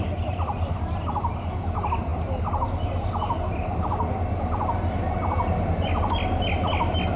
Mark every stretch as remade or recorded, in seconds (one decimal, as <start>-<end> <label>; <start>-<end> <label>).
0.0-7.2 recorded